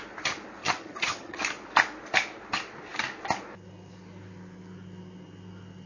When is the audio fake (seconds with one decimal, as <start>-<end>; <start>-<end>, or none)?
0.6-1.4